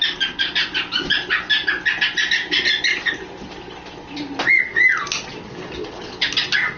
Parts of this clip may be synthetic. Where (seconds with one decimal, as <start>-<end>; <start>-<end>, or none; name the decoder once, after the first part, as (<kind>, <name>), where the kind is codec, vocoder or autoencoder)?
5.4-6.2 (codec, HILCodec)